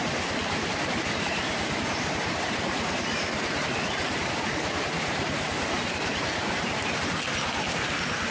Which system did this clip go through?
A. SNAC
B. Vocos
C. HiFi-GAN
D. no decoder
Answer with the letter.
D